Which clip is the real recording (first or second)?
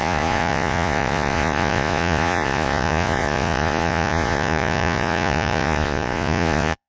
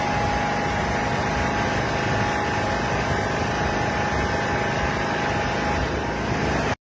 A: second